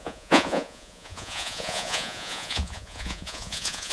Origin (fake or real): fake